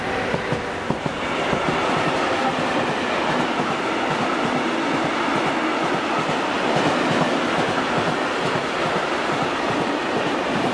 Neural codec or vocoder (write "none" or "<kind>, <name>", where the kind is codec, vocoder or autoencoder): none